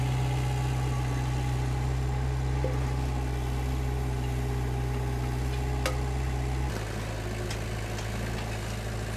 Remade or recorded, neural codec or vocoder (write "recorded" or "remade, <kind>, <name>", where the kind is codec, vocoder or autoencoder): recorded